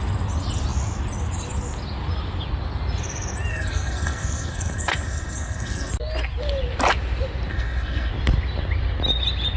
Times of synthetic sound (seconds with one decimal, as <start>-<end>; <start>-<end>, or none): 3.5-5.9; 7.5-8.1